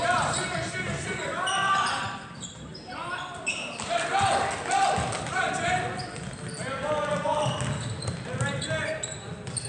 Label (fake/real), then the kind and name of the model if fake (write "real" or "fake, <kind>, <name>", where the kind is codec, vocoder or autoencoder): real